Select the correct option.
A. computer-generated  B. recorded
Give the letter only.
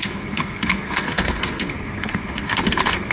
A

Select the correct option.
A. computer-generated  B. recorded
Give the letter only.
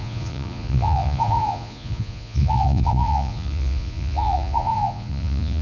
A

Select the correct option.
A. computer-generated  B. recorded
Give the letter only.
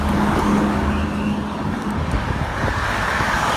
A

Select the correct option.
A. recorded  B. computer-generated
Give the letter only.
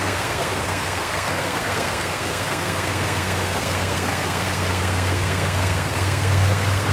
B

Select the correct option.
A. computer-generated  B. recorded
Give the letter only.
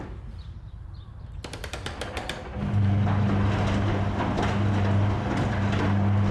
B